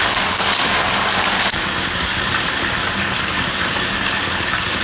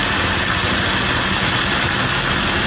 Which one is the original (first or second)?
second